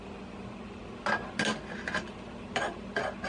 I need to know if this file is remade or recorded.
recorded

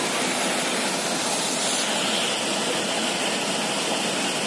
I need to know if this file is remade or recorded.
recorded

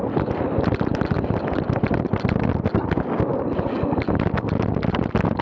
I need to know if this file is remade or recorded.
recorded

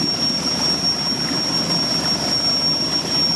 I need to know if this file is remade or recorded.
recorded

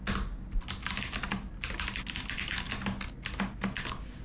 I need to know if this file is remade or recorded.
recorded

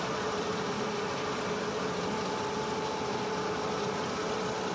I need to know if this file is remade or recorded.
recorded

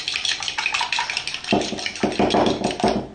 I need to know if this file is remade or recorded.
recorded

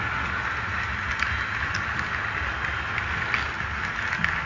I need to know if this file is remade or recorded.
recorded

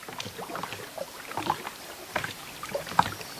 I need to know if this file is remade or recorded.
remade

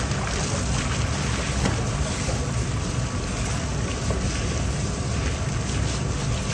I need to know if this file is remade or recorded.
recorded